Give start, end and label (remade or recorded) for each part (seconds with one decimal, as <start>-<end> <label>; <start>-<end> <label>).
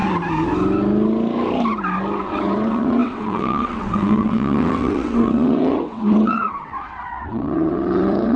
0.0-2.2 recorded; 2.2-8.4 remade